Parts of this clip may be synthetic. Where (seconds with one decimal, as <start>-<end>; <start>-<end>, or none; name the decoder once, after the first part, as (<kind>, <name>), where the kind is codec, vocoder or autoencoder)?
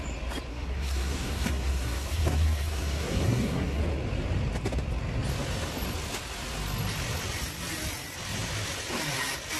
0.5-3.8 (codec, SNAC)